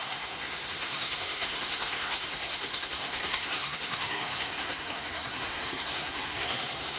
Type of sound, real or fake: fake